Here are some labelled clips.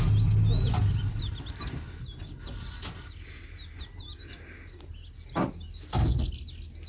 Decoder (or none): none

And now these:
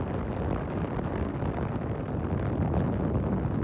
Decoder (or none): none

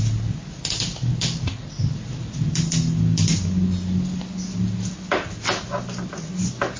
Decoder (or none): none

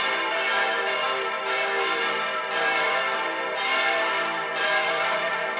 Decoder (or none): vocoder, BigVGAN v2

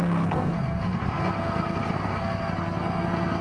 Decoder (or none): codec, SNAC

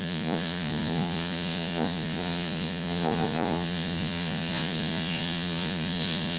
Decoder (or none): vocoder, Vocos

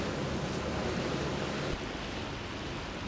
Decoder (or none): none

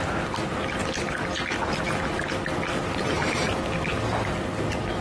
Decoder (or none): none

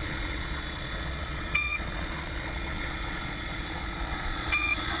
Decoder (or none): vocoder, Vocos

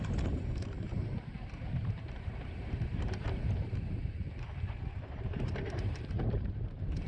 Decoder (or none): vocoder, BigVGAN v2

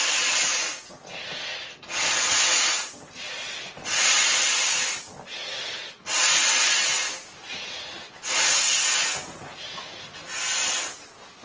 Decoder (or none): none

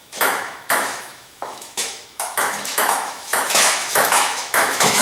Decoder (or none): autoencoder, DAC-VAE